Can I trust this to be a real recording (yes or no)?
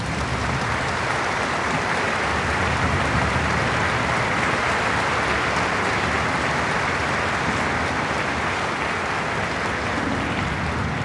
yes